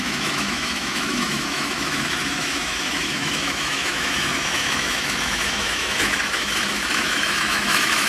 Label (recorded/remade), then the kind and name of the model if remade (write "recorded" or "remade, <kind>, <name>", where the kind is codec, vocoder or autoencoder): remade, autoencoder, DAC-VAE